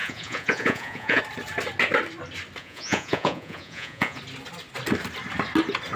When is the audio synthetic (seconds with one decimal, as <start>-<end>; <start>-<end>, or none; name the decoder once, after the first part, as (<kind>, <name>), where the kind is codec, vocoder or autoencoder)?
0.0-1.2 (vocoder, Vocos); 2.6-4.2

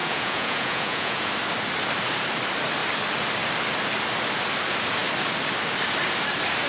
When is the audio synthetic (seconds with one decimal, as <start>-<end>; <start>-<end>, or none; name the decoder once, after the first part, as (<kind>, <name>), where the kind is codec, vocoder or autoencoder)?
0.0-1.3 (vocoder, Vocos)

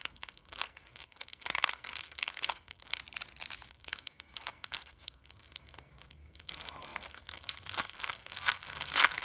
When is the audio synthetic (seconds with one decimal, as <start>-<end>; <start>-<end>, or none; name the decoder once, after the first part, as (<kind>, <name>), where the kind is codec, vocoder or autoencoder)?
0.0-3.0 (codec, SNAC); 3.7-9.2

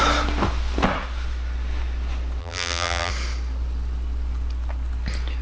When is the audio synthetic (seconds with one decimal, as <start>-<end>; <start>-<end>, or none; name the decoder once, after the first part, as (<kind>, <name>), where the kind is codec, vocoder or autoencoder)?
2.4-3.1 (vocoder, BigVGAN v2)